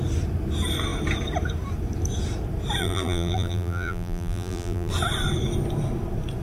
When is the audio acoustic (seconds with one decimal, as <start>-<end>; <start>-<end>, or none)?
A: 0.0-2.8; 4.9-6.4

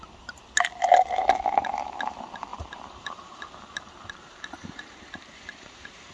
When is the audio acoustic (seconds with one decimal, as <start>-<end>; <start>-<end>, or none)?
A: 0.4-1.5

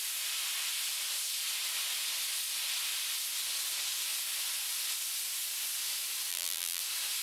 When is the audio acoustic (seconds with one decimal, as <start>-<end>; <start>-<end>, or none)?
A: 0.0-6.3; 6.8-7.2

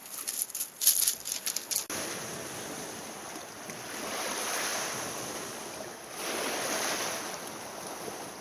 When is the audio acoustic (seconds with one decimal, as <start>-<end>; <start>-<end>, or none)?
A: 0.0-8.4

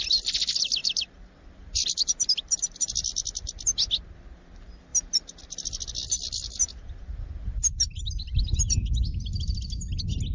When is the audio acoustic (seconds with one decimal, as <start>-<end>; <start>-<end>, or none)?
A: 0.0-0.8; 3.9-4.9; 5.4-6.6; 8.6-10.3

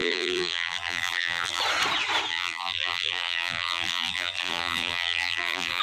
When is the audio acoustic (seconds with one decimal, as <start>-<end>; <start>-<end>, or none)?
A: 1.6-2.3